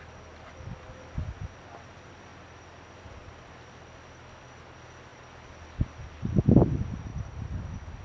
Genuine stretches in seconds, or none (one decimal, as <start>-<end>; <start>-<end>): 0.0-2.3; 3.3-7.1